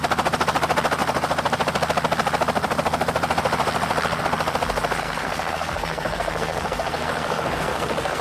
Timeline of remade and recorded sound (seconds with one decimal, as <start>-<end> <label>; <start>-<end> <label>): 0.0-5.0 recorded; 5.0-8.2 remade